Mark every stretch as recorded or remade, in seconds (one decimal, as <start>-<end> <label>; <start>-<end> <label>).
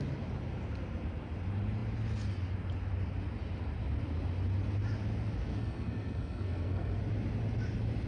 0.0-5.5 recorded; 5.5-7.0 remade; 7.0-8.1 recorded